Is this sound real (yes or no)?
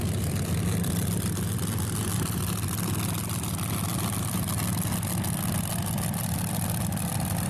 yes